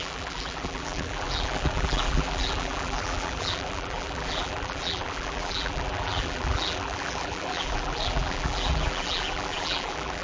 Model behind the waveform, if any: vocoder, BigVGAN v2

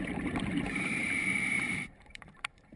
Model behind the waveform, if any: vocoder, BigVGAN v2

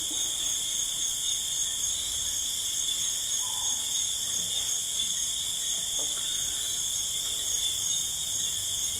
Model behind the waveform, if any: none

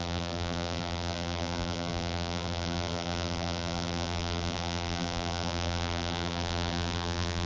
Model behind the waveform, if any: vocoder, BigVGAN v2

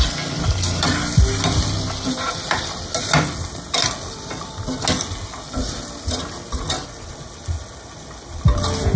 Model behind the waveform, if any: none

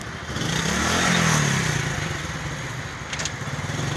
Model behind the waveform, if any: none